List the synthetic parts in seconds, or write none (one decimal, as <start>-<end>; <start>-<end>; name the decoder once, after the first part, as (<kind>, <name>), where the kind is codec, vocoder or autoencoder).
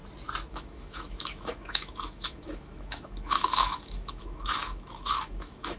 0.5-5.8 (autoencoder, DAC-VAE)